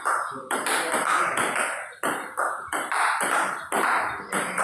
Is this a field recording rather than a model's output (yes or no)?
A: yes